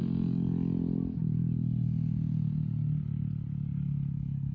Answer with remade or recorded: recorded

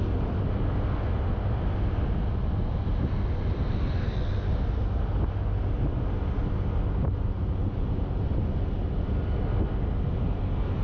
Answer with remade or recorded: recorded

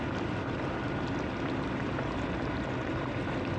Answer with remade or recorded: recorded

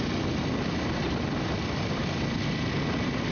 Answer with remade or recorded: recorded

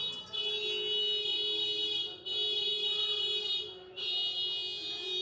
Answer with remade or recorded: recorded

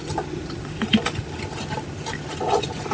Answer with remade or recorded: recorded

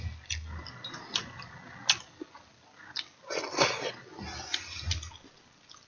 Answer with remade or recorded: recorded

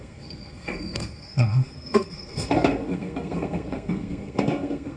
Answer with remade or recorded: remade